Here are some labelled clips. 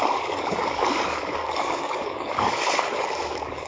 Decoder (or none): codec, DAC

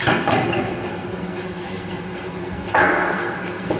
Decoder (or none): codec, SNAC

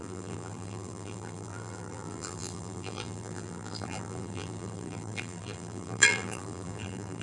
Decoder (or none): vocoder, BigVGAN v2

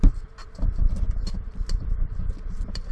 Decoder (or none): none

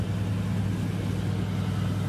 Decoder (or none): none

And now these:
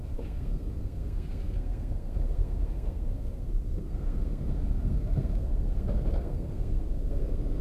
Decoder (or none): codec, SNAC